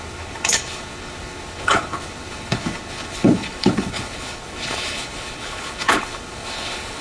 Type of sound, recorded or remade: remade